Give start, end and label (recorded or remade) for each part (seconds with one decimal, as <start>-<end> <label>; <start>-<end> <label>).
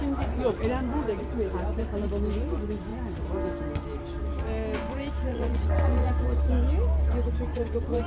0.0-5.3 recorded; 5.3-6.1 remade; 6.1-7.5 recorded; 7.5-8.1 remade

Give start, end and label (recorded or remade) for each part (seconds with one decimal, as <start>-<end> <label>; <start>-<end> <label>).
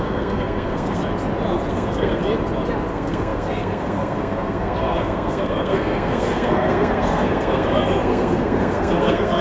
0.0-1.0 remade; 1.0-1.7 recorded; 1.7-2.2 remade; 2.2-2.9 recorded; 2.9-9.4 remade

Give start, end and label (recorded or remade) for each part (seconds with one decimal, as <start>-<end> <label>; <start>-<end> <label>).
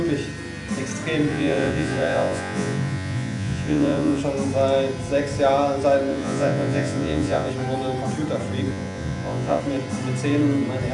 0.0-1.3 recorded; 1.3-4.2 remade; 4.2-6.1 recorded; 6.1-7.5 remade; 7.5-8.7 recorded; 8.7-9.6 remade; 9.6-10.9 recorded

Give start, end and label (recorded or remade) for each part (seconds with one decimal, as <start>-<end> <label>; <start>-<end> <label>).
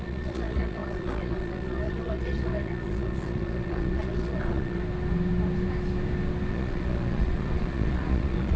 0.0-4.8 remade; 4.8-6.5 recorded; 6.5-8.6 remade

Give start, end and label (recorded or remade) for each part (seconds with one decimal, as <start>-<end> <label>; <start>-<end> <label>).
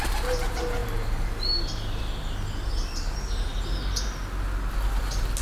0.0-5.4 recorded